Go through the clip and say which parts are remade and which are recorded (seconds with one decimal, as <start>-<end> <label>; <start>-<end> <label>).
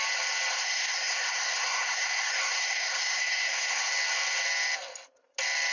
0.0-0.5 recorded; 0.5-3.9 remade; 3.9-5.7 recorded